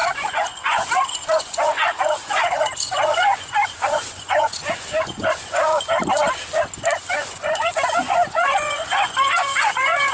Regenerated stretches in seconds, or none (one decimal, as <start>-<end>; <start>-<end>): 0.0-5.7; 7.1-10.1